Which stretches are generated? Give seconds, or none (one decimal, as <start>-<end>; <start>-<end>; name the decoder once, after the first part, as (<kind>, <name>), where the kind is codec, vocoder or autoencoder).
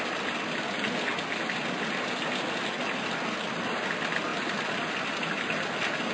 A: none